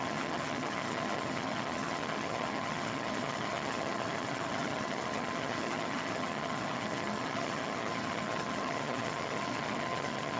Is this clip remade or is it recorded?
remade